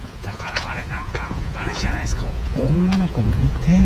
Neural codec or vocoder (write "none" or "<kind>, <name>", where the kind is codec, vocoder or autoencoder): vocoder, Vocos